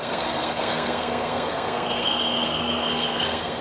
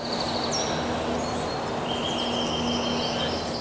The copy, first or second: first